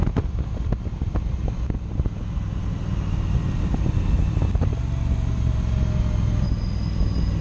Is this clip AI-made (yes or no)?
no